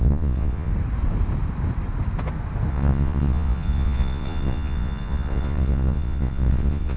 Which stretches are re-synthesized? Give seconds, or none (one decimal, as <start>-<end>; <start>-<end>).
0.0-0.7; 2.7-7.0